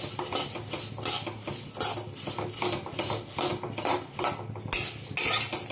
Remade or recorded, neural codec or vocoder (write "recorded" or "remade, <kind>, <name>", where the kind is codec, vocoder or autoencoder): recorded